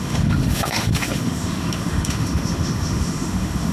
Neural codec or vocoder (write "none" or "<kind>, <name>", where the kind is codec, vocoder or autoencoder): autoencoder, DAC-VAE